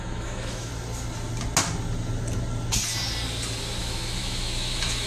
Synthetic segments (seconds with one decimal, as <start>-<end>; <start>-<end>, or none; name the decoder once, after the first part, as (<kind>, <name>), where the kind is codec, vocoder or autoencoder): 0.0-0.7 (autoencoder, DAC-VAE); 3.8-5.1